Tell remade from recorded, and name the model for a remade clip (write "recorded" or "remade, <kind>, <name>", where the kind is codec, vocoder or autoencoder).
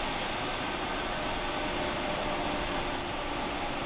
recorded